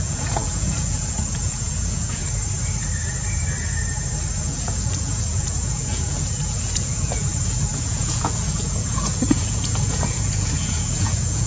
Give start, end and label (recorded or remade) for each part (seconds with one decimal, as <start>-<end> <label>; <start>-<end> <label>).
0.0-2.2 remade; 2.2-4.4 recorded; 4.4-11.5 remade

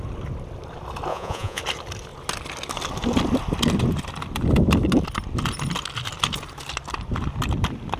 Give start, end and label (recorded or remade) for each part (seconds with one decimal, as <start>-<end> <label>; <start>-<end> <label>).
0.0-1.1 recorded; 1.1-1.6 remade; 1.6-8.0 recorded

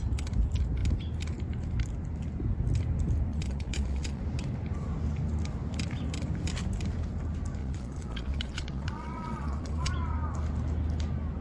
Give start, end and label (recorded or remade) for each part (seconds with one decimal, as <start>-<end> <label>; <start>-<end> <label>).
0.0-3.3 recorded; 3.3-4.2 remade; 4.2-7.6 recorded; 7.6-9.9 remade; 9.9-11.4 recorded

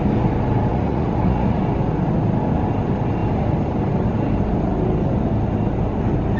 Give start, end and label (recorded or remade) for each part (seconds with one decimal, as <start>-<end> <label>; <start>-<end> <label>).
0.0-0.7 recorded; 0.7-1.6 remade; 1.6-6.4 recorded

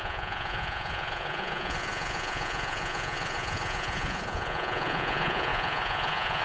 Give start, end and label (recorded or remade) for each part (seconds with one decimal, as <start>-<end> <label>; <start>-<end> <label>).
0.0-6.4 remade

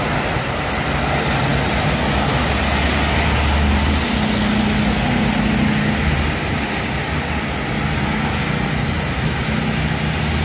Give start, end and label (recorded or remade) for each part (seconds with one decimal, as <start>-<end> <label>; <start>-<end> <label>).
0.0-10.4 recorded